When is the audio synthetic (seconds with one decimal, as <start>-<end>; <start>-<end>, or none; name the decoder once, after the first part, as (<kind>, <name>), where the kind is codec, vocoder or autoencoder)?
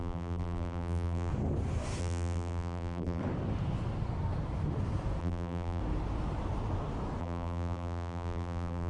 0.0-1.3 (vocoder, BigVGAN v2); 2.0-3.2; 5.2-5.8; 7.2-8.9